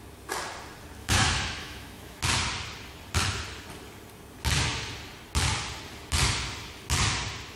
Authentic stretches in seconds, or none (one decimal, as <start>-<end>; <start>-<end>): 0.0-1.0; 2.2-7.6